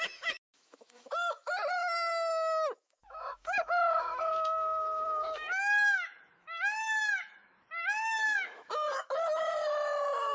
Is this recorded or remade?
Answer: remade